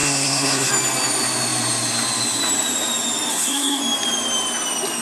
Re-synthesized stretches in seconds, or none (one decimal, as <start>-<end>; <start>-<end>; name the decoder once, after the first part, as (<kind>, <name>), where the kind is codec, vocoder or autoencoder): 0.0-0.7 (codec, SNAC); 3.3-3.8